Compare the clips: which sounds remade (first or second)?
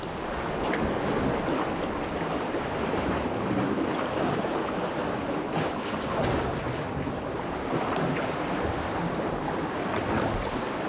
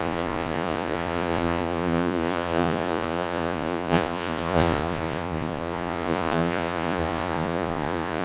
second